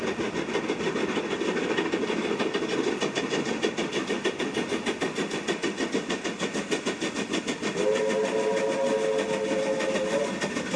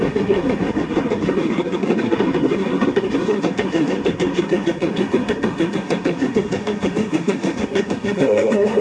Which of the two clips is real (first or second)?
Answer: first